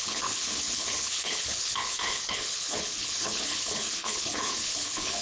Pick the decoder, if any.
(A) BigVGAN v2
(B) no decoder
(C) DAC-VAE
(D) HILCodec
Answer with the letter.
D